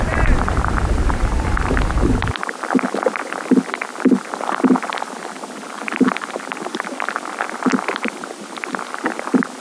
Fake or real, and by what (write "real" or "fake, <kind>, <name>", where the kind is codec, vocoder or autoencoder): real